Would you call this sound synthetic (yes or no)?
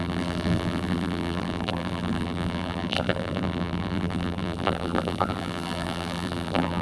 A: yes